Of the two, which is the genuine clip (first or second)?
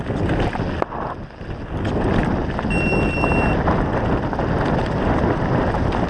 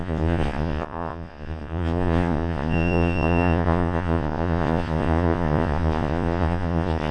first